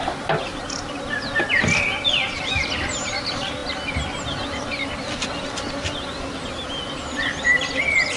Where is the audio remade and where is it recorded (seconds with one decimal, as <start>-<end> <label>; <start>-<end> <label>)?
0.0-8.2 recorded